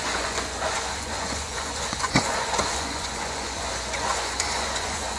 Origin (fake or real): fake